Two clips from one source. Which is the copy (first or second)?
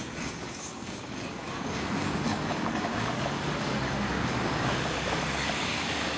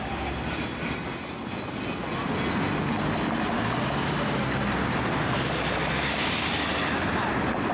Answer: first